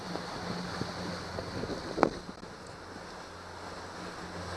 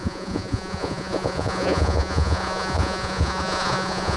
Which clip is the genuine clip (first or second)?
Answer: first